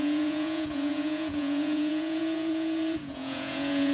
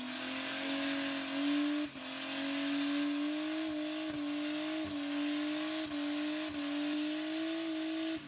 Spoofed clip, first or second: first